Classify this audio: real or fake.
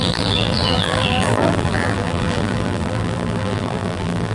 fake